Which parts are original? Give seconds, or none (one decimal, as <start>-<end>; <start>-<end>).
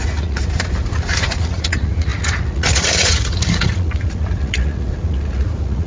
0.4-0.9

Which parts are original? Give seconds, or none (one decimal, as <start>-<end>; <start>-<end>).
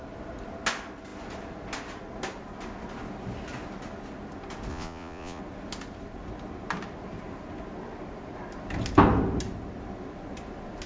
0.0-4.7; 5.4-10.9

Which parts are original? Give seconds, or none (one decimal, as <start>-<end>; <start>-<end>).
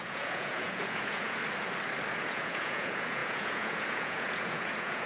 1.4-2.2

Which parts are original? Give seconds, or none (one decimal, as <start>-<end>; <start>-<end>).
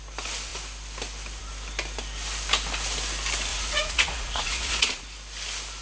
0.0-3.5; 5.0-5.8